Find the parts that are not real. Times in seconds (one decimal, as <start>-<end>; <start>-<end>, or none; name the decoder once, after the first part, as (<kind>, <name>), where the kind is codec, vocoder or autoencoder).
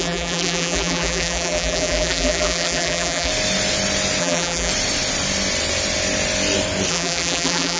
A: 0.0-3.3 (vocoder, BigVGAN v2); 4.2-4.7; 6.9-7.8